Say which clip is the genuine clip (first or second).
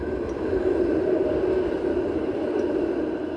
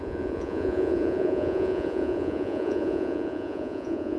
first